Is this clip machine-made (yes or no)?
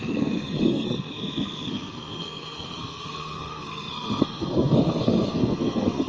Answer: yes